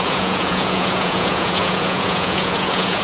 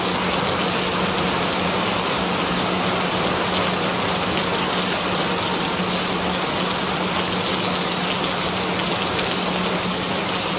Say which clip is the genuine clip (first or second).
second